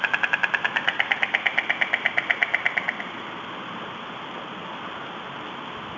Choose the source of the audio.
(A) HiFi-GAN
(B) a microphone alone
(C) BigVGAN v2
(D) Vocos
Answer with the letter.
B